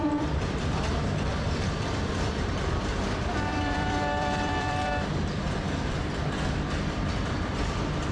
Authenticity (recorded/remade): remade